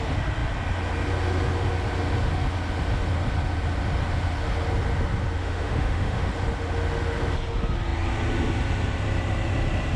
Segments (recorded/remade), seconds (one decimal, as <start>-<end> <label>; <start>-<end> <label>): 0.0-5.4 recorded; 5.4-6.3 remade; 6.3-10.0 recorded